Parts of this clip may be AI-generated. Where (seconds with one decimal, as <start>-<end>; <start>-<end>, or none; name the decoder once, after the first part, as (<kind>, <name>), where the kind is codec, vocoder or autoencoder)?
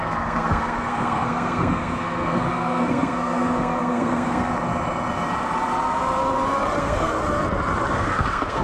0.0-4.5 (codec, SNAC); 6.8-7.2; 7.9-8.6